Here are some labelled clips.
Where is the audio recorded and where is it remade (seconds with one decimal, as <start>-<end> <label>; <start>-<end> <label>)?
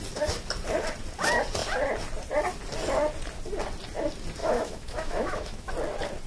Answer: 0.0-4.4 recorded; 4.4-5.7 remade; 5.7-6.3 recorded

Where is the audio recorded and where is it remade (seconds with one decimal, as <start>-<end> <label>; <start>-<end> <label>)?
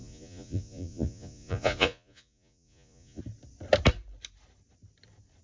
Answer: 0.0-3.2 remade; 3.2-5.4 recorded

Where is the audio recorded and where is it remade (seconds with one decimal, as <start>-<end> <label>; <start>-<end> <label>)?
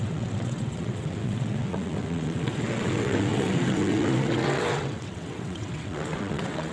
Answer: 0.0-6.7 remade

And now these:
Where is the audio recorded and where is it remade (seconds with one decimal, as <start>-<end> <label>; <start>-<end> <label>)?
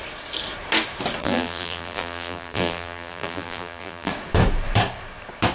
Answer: 0.0-1.2 recorded; 1.2-4.1 remade; 4.1-5.5 recorded